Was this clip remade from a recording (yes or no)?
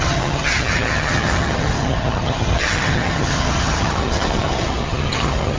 yes